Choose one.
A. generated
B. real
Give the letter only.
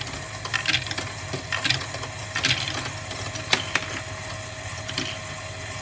B